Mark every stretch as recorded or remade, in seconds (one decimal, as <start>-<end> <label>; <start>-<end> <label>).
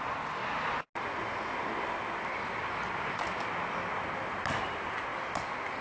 0.0-5.8 recorded